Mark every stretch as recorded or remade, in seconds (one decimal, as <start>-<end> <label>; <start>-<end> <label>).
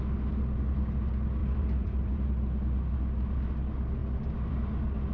0.0-1.4 recorded; 1.4-2.3 remade; 2.3-5.1 recorded